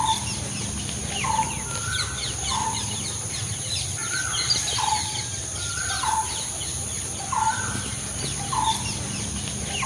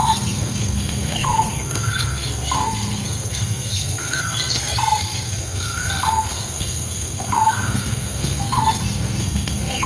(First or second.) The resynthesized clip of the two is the second